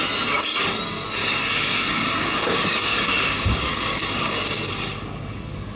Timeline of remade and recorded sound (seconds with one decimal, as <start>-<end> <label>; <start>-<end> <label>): 0.0-1.2 recorded; 1.2-4.7 remade; 4.7-5.8 recorded